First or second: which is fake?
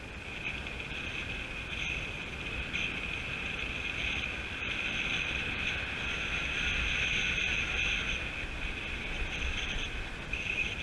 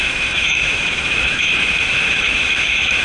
second